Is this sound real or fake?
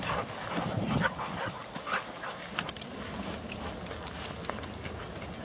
real